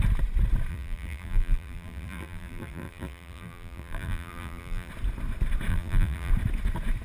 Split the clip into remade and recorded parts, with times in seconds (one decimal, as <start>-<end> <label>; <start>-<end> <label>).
0.0-0.7 recorded; 0.7-4.9 remade; 4.9-5.7 recorded; 5.7-6.3 remade; 6.3-7.0 recorded